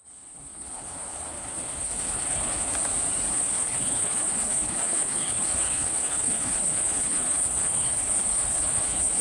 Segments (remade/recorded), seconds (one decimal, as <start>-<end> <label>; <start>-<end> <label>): 0.0-2.7 remade; 2.7-3.3 recorded; 3.3-9.2 remade